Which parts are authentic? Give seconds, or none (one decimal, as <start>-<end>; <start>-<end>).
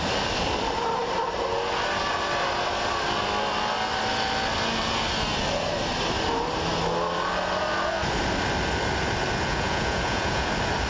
0.0-9.5; 10.5-10.9